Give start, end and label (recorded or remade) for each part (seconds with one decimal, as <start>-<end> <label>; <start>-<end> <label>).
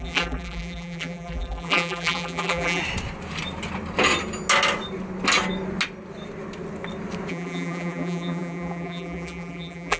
0.0-2.8 remade; 2.8-7.3 recorded; 7.3-10.0 remade